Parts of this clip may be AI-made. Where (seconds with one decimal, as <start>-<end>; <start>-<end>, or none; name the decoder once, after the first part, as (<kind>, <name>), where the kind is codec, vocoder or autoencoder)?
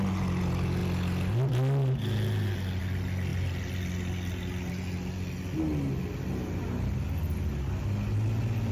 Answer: none